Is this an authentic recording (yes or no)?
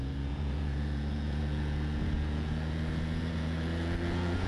no